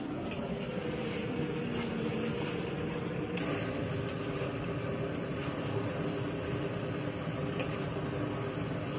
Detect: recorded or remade recorded